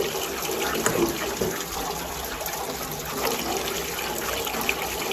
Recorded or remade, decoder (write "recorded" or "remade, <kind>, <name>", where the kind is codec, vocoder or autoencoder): recorded